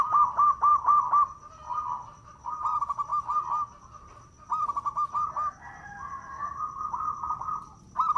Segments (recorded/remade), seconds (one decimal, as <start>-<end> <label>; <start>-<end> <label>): 0.0-8.2 recorded